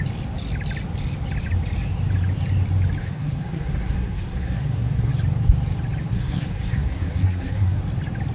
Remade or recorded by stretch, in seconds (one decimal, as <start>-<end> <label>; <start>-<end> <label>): 0.0-3.0 recorded; 3.0-5.1 remade; 5.1-6.1 recorded; 6.1-7.8 remade; 7.8-8.3 recorded